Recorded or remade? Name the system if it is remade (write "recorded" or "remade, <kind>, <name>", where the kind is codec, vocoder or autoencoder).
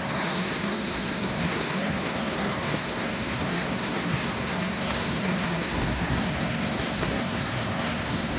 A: remade, codec, SNAC